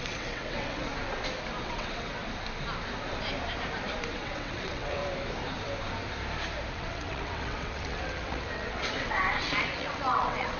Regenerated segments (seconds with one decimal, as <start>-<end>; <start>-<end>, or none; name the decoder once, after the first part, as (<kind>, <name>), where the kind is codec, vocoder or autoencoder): 0.0-0.9 (vocoder, WaveNeXt); 1.6-2.2; 4.1-5.0; 6.7-10.6